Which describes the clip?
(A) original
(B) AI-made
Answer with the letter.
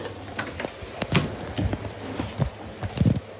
A